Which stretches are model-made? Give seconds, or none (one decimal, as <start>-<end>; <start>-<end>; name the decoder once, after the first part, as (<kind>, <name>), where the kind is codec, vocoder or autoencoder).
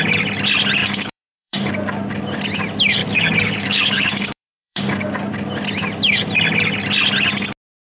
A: 0.8-1.7 (codec, DAC); 3.0-5.3